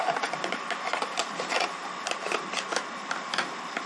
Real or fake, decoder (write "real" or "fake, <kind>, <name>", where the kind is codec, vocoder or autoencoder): real